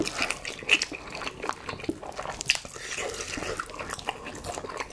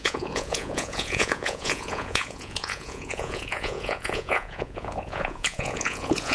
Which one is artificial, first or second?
second